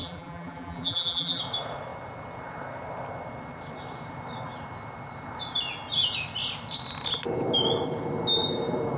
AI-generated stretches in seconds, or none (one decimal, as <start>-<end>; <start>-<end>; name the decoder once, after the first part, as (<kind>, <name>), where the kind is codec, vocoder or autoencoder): 0.0-1.4 (vocoder, BigVGAN v2)